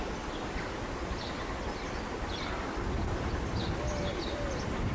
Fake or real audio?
real